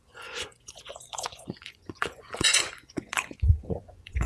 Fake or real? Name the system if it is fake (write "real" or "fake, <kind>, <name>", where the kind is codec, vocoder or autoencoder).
fake, vocoder, Vocos